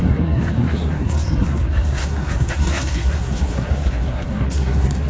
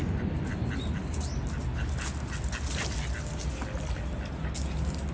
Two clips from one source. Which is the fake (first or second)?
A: first